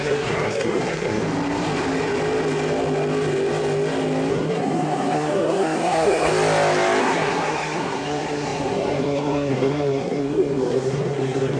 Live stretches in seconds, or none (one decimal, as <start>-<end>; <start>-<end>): 1.2-4.3; 6.3-7.0